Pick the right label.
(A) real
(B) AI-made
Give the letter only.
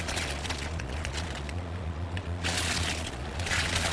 B